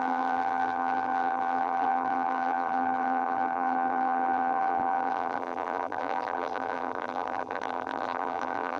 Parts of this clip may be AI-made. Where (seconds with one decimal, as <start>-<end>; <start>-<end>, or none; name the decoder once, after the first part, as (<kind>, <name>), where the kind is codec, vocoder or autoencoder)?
0.0-8.8 (vocoder, BigVGAN v2)